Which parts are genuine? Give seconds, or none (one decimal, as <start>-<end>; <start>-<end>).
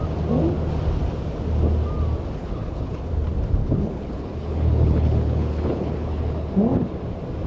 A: 0.0-2.4; 3.1-3.6; 6.5-7.5